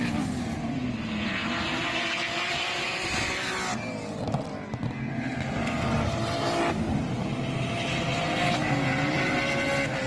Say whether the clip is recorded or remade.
recorded